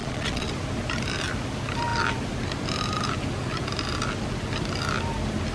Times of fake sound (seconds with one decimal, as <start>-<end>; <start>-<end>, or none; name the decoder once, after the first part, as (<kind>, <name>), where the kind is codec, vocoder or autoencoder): 0.0-0.5 (vocoder, Vocos)